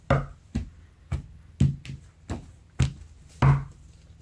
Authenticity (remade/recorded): recorded